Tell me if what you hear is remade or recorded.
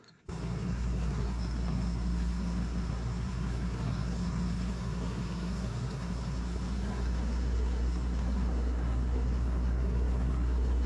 remade